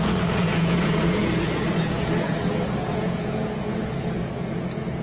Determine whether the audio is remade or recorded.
remade